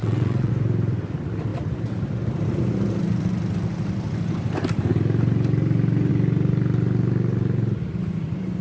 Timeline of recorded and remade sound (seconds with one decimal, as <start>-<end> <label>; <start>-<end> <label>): 0.0-0.5 remade; 0.5-8.6 recorded